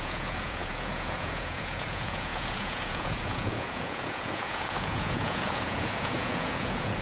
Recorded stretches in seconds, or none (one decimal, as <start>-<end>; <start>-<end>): none